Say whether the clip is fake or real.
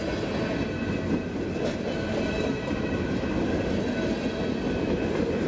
real